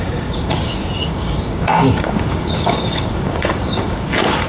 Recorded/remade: remade